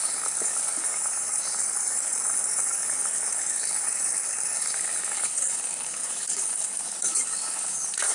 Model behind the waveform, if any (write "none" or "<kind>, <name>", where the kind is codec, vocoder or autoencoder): codec, DAC